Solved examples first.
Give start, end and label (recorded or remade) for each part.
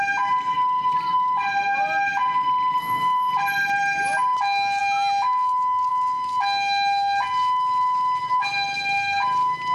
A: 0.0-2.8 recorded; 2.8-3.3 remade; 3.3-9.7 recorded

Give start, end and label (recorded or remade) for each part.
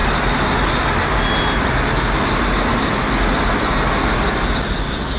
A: 0.0-5.2 recorded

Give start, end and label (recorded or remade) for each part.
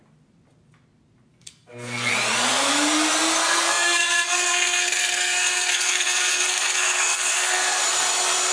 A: 0.0-1.3 recorded; 1.3-2.1 remade; 2.1-3.4 recorded; 3.4-7.8 remade; 7.8-8.5 recorded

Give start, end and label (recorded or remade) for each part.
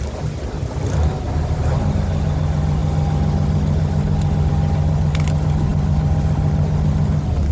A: 0.0-7.5 recorded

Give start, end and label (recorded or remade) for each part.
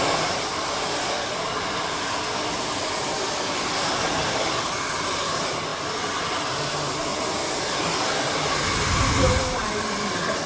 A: 0.0-10.5 recorded